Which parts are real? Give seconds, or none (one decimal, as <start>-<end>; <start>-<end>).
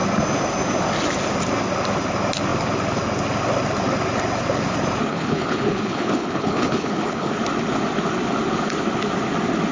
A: 0.0-5.1; 7.3-9.7